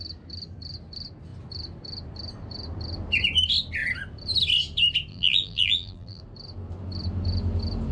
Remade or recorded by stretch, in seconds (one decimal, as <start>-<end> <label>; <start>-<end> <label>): 0.0-5.1 recorded; 5.1-6.2 remade; 6.2-7.9 recorded